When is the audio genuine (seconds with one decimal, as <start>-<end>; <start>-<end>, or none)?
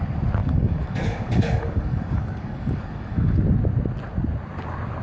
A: 0.0-0.4; 3.4-5.0